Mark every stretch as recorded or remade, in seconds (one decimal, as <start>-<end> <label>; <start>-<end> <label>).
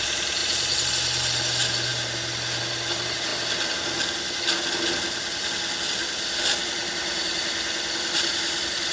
0.0-8.9 recorded